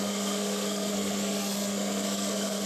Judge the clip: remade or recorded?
remade